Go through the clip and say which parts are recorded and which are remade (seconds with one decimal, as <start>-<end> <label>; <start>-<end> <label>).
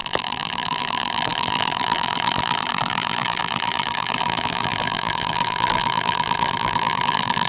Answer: 0.0-7.5 remade